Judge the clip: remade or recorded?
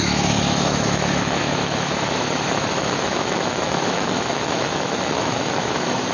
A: remade